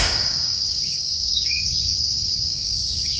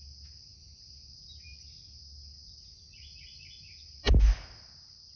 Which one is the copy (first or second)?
first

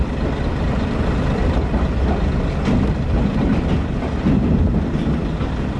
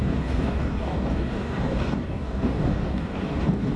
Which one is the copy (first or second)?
second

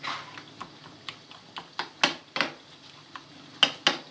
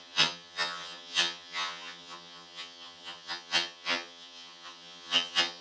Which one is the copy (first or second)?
second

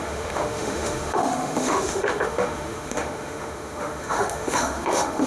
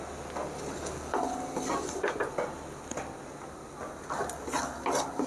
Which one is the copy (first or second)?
first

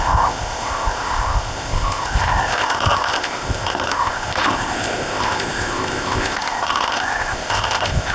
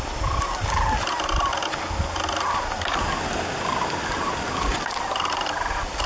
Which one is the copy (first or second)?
first